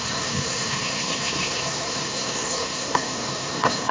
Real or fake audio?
fake